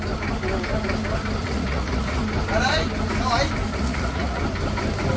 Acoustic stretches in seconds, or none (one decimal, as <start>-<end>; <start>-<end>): 0.0-1.4; 2.2-3.7; 4.4-5.2